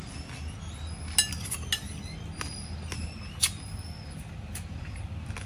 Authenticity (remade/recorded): recorded